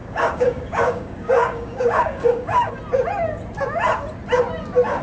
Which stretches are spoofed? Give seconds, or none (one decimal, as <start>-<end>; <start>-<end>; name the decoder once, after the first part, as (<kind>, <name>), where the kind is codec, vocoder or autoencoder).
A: 0.0-2.7 (codec, DAC)